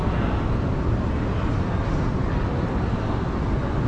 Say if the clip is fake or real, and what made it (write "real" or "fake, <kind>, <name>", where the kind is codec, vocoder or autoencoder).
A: real